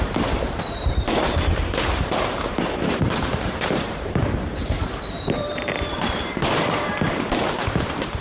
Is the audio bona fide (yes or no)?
no